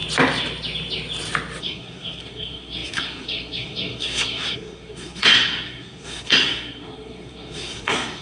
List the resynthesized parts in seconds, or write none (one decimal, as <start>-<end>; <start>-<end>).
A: 1.6-8.2